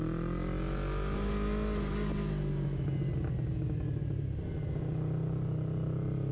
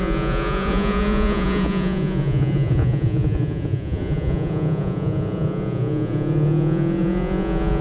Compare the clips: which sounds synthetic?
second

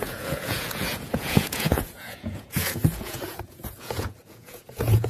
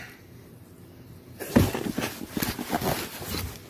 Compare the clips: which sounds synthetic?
first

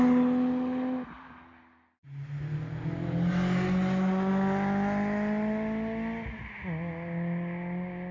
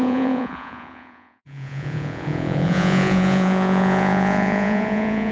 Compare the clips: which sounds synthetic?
second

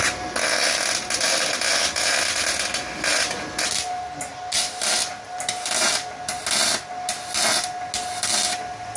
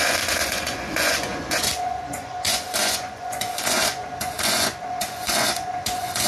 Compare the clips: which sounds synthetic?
second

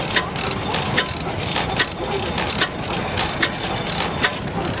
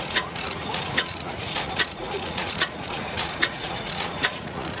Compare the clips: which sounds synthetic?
second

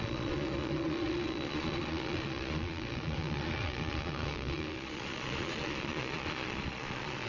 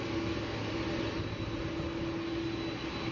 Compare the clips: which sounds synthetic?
first